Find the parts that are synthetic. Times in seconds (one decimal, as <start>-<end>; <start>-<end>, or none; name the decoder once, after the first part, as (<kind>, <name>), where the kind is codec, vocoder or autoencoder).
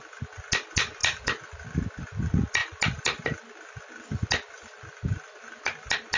none